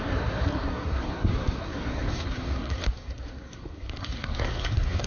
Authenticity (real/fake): fake